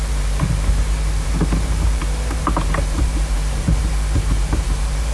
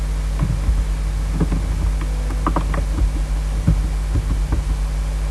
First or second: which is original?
second